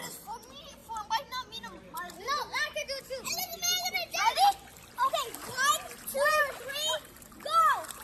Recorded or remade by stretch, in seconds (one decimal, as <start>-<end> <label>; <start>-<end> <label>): 0.0-8.0 recorded